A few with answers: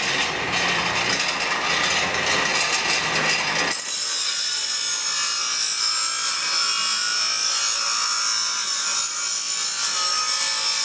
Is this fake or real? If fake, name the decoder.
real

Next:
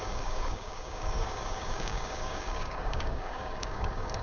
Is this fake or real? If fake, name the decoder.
fake, codec, DAC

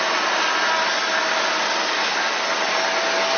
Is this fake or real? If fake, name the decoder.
real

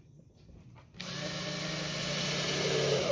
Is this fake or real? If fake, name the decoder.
real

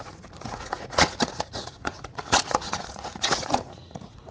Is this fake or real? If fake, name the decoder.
fake, vocoder, Vocos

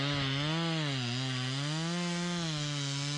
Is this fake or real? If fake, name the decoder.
real